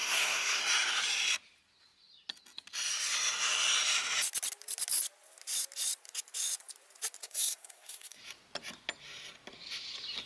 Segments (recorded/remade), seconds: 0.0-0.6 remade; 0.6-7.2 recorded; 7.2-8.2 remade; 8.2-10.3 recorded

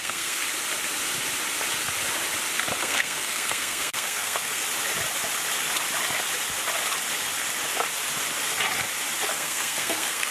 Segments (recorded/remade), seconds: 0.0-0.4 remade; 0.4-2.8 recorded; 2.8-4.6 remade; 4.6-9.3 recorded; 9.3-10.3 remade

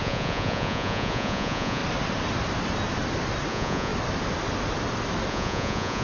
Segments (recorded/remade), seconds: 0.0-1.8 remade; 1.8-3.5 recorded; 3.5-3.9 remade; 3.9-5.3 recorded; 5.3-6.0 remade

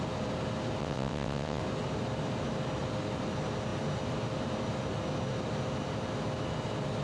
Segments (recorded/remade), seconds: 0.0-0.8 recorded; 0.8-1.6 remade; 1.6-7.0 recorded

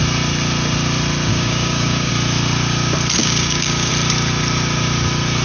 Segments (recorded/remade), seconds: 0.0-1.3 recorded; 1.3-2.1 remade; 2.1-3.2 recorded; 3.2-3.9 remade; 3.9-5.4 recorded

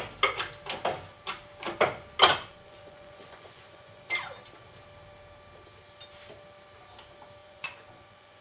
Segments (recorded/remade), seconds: 0.0-2.3 recorded; 2.3-4.1 remade; 4.1-7.4 recorded; 7.4-8.4 remade

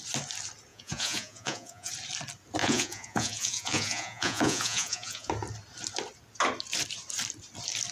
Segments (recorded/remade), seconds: 0.0-0.7 recorded; 0.7-1.9 remade; 1.9-2.6 recorded; 2.6-5.3 remade; 5.3-7.9 recorded